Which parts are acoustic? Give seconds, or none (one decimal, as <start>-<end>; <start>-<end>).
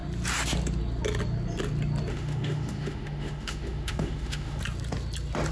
0.0-2.1; 4.6-5.5